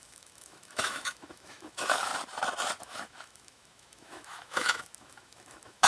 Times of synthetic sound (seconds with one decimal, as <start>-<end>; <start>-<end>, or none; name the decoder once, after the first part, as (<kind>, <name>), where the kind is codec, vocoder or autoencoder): 0.0-2.1 (autoencoder, DAC-VAE); 2.8-5.9